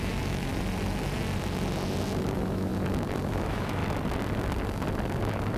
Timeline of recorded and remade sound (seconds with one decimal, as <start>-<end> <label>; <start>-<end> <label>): 0.0-0.5 remade; 0.5-2.2 recorded; 2.2-2.7 remade; 2.7-3.3 recorded; 3.3-3.8 remade; 3.8-5.6 recorded